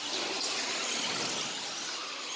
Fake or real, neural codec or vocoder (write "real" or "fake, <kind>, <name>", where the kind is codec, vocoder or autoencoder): real